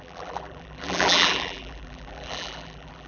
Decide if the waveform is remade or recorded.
remade